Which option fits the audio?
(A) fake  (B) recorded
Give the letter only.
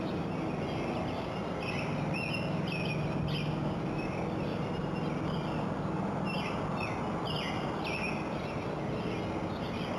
B